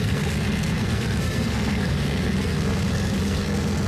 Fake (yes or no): yes